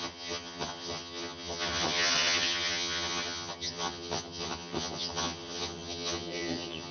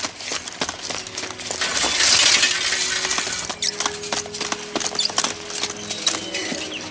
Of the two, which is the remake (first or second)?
first